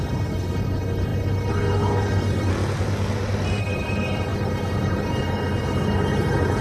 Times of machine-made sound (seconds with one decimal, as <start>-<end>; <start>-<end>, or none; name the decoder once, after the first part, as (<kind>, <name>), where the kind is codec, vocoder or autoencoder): 0.0-2.5 (codec, HILCodec); 3.6-6.6